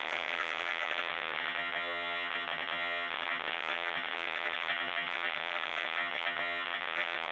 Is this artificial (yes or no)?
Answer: yes